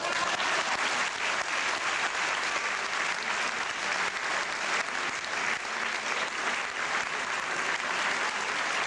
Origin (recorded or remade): recorded